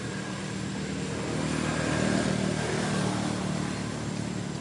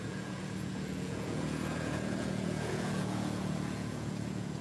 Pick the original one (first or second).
first